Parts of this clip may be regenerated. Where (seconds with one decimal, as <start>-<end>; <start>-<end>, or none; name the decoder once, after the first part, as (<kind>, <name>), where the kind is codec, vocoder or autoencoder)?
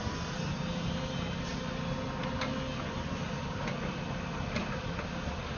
none